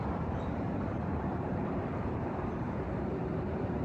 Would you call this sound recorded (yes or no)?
no